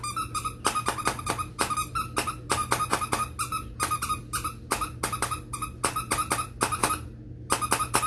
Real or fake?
real